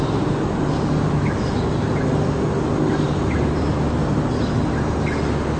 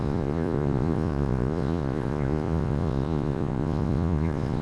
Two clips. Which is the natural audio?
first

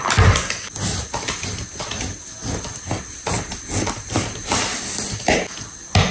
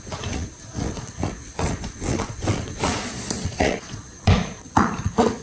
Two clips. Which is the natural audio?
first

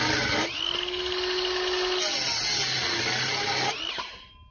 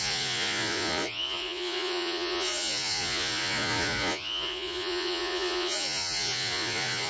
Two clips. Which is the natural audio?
first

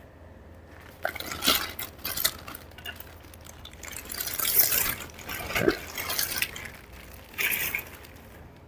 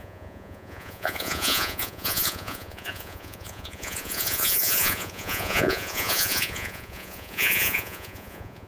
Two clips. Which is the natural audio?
first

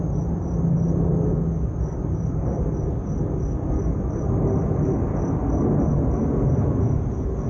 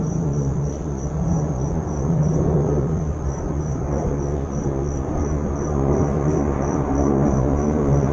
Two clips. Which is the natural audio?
first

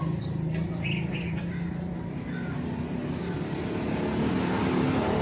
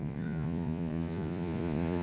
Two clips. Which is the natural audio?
first